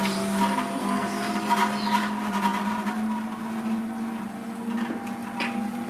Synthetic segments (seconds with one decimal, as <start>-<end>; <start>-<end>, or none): 0.8-1.3